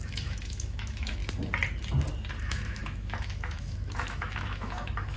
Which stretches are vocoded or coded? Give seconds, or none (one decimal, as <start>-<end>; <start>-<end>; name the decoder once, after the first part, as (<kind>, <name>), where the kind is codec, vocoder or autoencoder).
0.0-1.2 (autoencoder, DAC-VAE); 2.4-5.2